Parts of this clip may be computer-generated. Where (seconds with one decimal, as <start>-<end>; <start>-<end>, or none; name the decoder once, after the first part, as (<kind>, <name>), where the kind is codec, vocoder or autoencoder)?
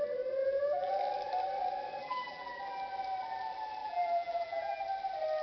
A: 0.4-0.9 (vocoder, BigVGAN v2); 2.0-2.6; 3.8-4.8